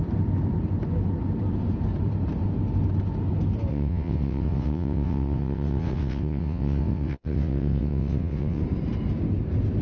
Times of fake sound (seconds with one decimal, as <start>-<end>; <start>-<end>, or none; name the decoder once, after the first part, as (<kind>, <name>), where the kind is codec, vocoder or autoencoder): 3.7-8.6 (vocoder, WaveNeXt)